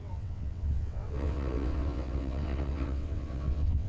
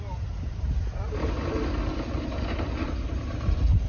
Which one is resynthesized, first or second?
first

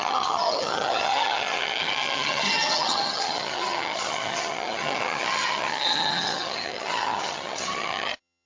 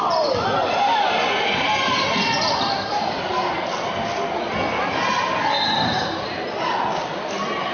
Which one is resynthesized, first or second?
first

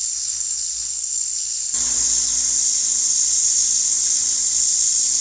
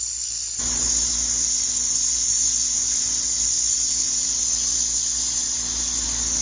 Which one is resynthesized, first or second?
second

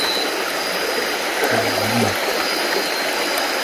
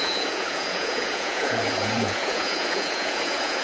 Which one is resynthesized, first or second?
second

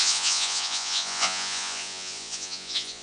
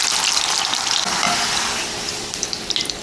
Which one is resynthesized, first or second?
first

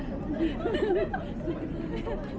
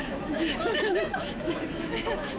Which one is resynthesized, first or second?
second